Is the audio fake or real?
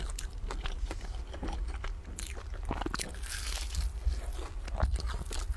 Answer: real